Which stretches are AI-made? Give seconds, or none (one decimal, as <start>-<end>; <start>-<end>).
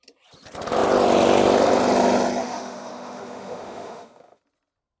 2.4-4.4